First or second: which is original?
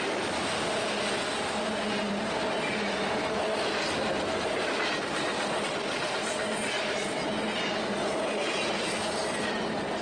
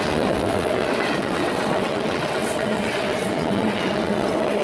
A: first